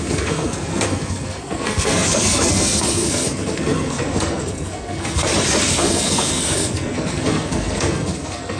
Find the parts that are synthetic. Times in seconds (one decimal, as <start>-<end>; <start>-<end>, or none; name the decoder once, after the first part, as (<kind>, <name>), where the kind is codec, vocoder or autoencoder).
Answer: 0.0-5.3 (codec, SNAC); 5.8-8.6